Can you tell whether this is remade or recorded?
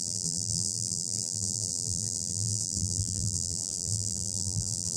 remade